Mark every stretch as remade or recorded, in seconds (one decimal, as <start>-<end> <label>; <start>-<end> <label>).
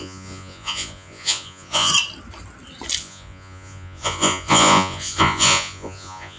0.0-1.9 remade; 1.9-3.0 recorded; 3.0-6.4 remade